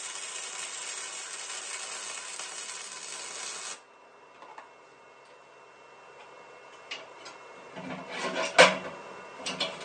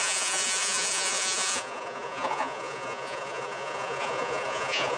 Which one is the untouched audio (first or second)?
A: first